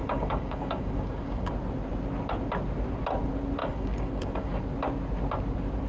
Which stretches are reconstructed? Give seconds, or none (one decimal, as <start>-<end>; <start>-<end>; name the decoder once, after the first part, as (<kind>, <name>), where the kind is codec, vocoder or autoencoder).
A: 0.0-1.5 (codec, DAC); 3.6-4.6